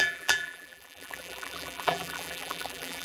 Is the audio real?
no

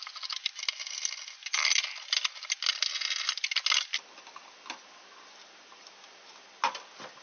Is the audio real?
yes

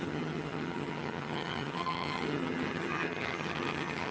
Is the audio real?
no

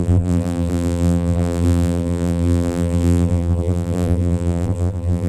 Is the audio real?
no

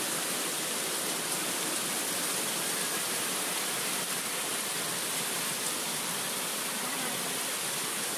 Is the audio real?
yes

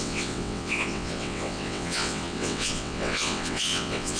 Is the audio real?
no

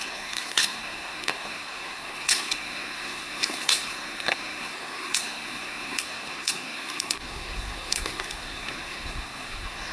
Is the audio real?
no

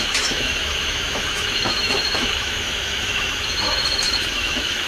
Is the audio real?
no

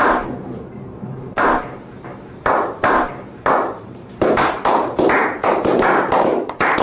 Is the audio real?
no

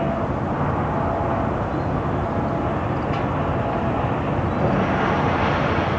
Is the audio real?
yes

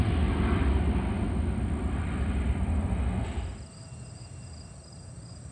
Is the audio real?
yes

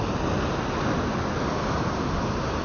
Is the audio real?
yes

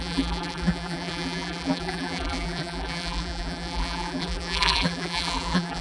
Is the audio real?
no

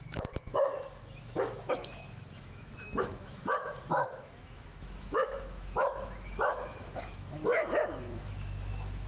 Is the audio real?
no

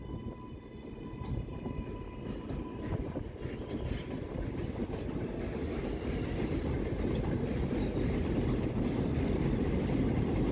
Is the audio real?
yes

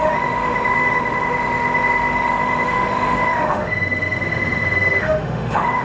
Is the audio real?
no